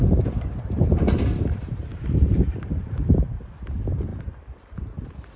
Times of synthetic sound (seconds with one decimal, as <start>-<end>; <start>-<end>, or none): 0.0-4.1; 4.8-5.4